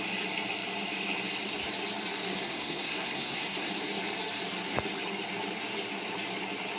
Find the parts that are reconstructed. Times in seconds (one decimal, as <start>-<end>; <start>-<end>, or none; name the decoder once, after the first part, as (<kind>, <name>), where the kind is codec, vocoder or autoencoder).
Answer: 2.3-3.7 (codec, SNAC)